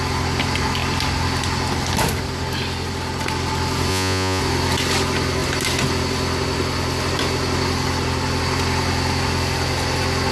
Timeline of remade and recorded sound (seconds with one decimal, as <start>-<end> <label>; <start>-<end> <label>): 0.0-3.9 recorded; 3.9-4.4 remade; 4.4-10.3 recorded